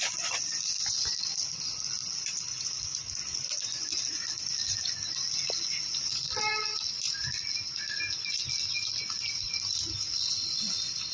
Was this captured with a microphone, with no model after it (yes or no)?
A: yes